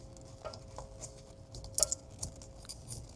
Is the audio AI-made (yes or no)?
no